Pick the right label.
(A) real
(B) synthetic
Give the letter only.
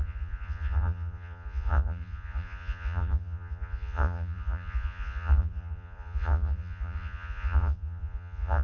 B